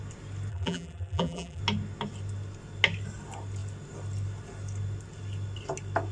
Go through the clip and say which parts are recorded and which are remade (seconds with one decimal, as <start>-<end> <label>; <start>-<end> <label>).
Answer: 0.0-0.5 recorded; 0.5-1.6 remade; 1.6-6.1 recorded

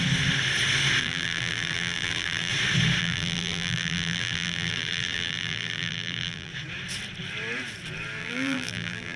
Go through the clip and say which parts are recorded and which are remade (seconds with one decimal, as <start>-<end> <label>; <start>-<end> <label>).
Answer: 0.0-1.0 recorded; 1.0-2.5 remade; 2.5-3.0 recorded; 3.0-6.5 remade; 6.5-8.2 recorded; 8.2-9.2 remade

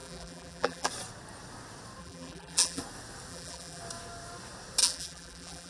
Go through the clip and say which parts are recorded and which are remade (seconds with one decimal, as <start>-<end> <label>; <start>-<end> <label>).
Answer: 0.0-0.9 remade; 0.9-2.0 recorded; 2.0-2.8 remade; 2.8-3.3 recorded; 3.3-3.8 remade; 3.8-4.8 recorded; 4.8-5.7 remade

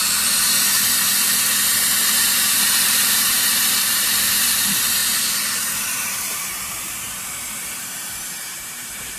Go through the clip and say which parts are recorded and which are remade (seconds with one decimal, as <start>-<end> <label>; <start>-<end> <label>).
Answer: 0.0-2.0 recorded; 2.0-9.2 remade

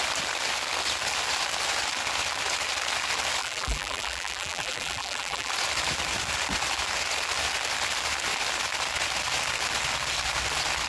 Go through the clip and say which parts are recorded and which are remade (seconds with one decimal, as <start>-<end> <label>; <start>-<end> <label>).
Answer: 0.0-3.4 recorded; 3.4-5.5 remade; 5.5-10.9 recorded

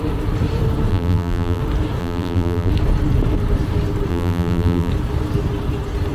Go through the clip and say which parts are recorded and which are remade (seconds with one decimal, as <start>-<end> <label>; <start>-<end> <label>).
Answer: 0.0-0.9 recorded; 0.9-1.6 remade; 1.6-2.0 recorded; 2.0-2.7 remade; 2.7-4.1 recorded; 4.1-4.9 remade; 4.9-6.1 recorded

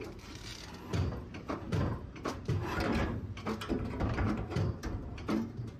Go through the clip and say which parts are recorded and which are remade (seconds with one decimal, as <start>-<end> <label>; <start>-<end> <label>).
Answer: 0.0-0.5 remade; 0.5-1.2 recorded; 1.2-5.8 remade

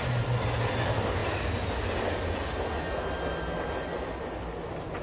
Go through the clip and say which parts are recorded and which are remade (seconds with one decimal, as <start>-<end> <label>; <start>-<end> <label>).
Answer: 0.0-5.0 recorded